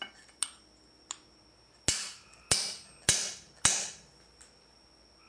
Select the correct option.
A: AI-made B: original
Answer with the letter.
B